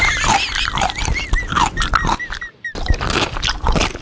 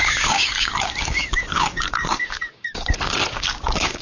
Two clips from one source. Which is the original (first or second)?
first